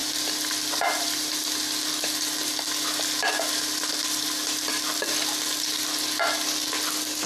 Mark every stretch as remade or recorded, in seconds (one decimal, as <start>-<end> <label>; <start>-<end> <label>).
0.0-7.3 recorded